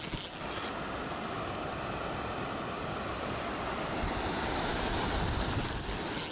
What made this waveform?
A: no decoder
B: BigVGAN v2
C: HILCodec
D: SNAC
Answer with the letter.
A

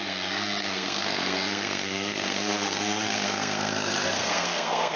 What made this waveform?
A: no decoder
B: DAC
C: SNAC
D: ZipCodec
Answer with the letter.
C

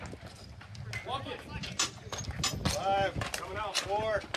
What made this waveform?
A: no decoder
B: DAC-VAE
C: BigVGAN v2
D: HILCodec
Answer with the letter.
A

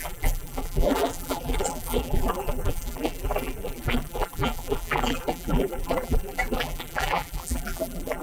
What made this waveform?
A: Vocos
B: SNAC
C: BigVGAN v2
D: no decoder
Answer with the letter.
C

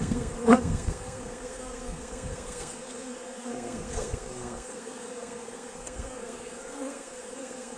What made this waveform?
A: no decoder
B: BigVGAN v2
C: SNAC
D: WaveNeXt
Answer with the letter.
C